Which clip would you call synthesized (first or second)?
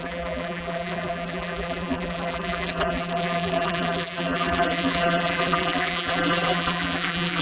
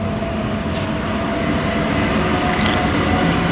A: first